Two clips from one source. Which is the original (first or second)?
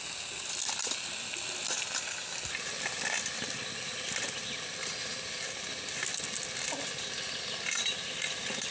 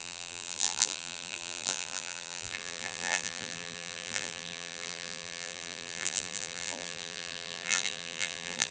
first